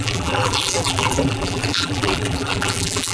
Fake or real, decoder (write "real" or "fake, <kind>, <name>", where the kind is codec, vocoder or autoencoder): fake, vocoder, BigVGAN v2